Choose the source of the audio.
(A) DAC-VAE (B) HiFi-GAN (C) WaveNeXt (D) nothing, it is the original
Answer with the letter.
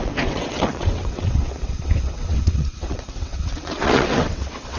C